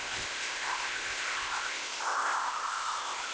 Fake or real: fake